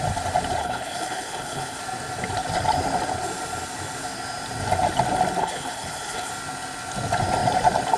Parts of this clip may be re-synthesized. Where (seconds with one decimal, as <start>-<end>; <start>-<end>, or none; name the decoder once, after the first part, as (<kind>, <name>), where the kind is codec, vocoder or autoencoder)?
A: 0.6-1.8 (codec, HILCodec); 5.4-6.3